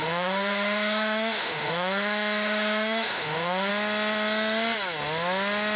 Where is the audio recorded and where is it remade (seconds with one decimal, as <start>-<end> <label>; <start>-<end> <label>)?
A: 0.0-3.7 remade; 3.7-5.8 recorded